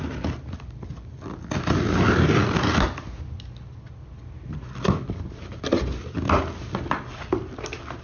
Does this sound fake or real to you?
real